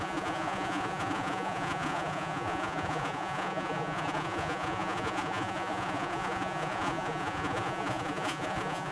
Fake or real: fake